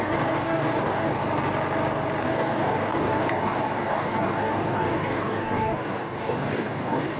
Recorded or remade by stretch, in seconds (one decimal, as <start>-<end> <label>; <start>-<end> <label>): 0.0-1.2 remade; 1.2-2.2 recorded; 2.2-7.2 remade